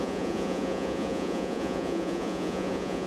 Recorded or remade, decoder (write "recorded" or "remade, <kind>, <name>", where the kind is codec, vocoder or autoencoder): remade, vocoder, Vocos